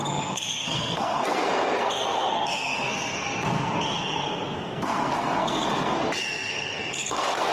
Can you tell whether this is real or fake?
fake